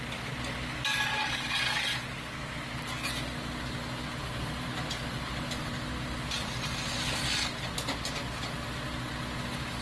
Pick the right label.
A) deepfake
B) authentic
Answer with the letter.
B